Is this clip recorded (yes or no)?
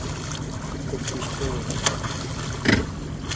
yes